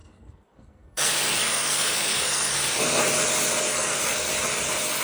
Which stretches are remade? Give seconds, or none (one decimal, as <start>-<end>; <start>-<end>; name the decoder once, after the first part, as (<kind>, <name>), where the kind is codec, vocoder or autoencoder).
0.0-3.0 (codec, SNAC); 3.7-4.3